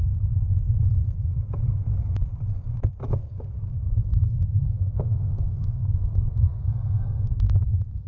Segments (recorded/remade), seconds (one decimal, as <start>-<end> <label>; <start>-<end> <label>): 0.0-3.9 recorded; 3.9-8.1 remade